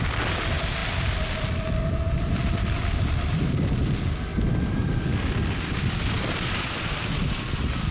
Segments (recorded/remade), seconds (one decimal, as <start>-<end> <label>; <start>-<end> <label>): 0.0-7.9 recorded